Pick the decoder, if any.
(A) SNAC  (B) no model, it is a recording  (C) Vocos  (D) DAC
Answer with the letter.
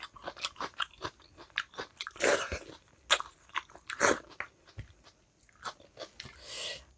B